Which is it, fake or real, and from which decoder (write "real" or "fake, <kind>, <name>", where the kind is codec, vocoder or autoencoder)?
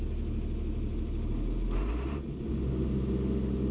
real